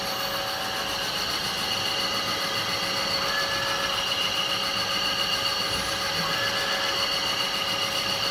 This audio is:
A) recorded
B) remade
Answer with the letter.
A